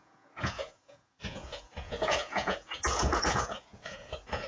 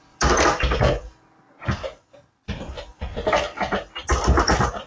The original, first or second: second